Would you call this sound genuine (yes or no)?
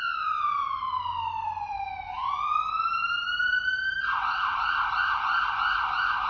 yes